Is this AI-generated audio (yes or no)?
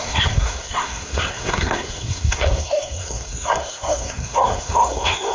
yes